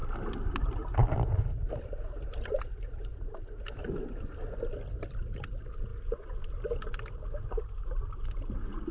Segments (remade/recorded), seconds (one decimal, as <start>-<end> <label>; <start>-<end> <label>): 0.0-8.9 recorded